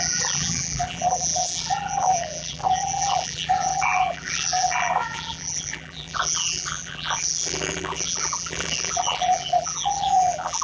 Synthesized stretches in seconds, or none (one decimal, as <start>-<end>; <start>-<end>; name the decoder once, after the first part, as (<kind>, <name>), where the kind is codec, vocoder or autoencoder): 0.0-10.6 (vocoder, BigVGAN v2)